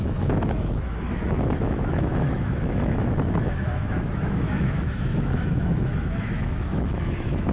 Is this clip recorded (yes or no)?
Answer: no